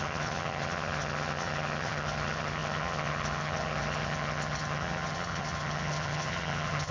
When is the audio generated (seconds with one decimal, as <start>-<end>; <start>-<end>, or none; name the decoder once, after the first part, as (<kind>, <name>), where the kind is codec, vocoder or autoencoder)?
0.0-6.9 (vocoder, HiFi-GAN)